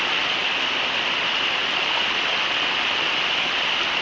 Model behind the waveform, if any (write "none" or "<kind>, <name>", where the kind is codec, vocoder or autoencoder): none